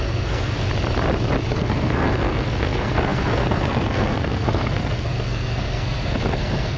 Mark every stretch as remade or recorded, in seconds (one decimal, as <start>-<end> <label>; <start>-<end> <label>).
0.0-0.6 remade; 0.6-1.5 recorded; 1.5-6.8 remade